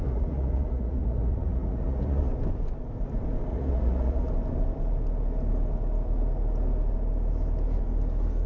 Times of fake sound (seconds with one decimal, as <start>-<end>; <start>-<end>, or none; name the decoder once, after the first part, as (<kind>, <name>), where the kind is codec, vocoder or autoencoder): 0.0-2.3 (vocoder, Vocos); 3.5-4.3